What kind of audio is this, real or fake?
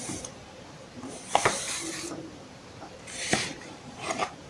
fake